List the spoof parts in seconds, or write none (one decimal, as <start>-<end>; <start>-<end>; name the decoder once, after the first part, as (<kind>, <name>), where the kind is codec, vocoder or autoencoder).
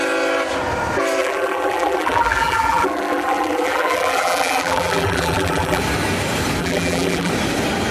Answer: 1.2-5.8 (vocoder, BigVGAN v2); 6.6-7.3